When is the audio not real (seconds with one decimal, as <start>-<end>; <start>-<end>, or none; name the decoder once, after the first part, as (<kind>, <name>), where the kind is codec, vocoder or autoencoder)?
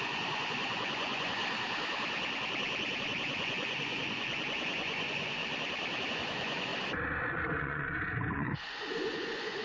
0.0-1.4 (vocoder, Vocos); 3.0-5.4; 6.1-6.7; 7.6-9.6